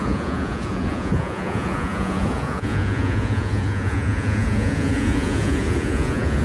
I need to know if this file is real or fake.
fake